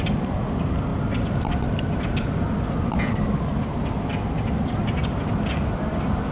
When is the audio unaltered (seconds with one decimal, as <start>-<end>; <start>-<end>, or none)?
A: 0.0-6.3